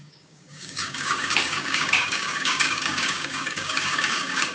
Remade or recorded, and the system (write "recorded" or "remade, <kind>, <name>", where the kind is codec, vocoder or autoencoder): remade, codec, DAC